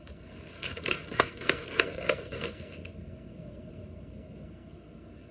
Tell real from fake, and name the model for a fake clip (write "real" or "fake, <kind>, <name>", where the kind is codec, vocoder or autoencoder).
fake, codec, SNAC